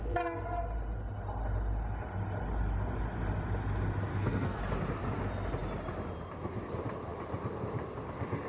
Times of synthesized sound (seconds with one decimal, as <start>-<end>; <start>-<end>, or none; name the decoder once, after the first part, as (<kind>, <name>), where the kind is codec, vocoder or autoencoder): 4.1-4.6 (codec, SNAC)